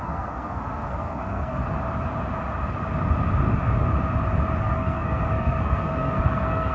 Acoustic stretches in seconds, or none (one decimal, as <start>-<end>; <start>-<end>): 1.6-4.6